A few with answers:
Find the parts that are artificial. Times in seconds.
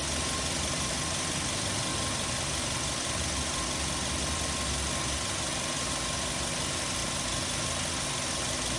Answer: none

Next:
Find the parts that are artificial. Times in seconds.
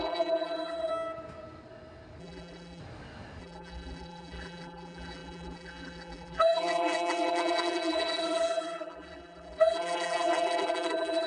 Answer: 0.0-0.9 (vocoder, BigVGAN v2); 2.2-2.8; 3.4-11.3